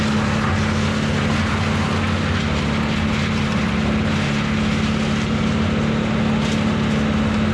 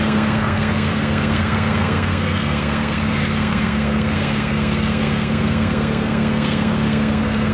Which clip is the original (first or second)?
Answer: first